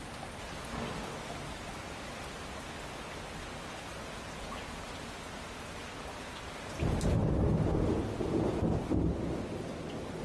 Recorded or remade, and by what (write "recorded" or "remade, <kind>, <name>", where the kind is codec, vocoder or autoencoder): recorded